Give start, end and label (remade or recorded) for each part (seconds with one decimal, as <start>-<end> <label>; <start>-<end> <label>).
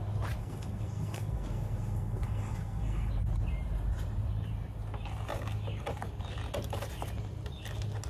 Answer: 0.0-0.4 recorded; 0.4-3.1 remade; 3.1-8.1 recorded